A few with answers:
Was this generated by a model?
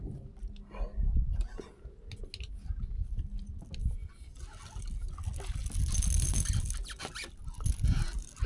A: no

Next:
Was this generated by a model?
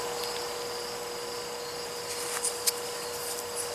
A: no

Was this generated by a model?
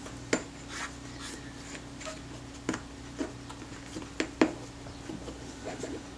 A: no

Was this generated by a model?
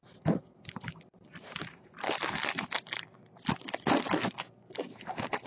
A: yes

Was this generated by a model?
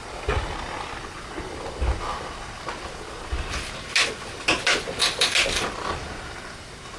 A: no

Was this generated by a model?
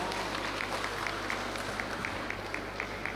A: no